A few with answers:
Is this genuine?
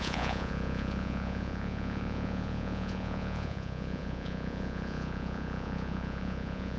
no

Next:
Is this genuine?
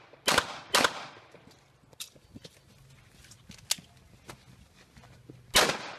yes